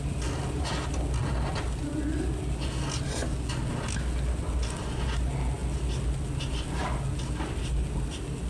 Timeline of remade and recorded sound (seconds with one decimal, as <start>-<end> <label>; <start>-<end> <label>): 0.0-8.5 recorded